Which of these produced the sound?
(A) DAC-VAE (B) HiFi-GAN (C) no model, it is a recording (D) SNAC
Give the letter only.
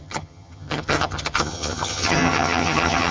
B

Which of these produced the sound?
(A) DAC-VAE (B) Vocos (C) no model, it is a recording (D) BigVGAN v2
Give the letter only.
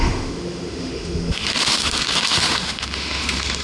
A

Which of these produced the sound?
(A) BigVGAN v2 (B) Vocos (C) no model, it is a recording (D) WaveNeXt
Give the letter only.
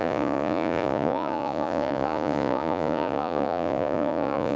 B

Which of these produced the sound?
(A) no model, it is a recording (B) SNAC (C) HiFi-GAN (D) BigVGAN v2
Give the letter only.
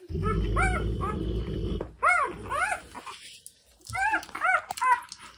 A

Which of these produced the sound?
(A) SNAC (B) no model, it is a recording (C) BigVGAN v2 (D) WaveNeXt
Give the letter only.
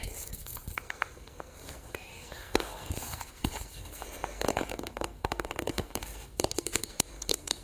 A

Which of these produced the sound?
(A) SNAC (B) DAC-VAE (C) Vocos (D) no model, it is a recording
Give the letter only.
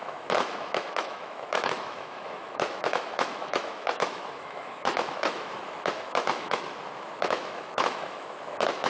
B